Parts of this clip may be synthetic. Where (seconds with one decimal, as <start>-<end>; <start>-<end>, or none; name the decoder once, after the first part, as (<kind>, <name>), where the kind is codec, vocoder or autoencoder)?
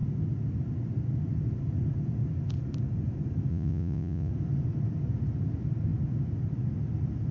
3.5-4.3 (vocoder, Vocos)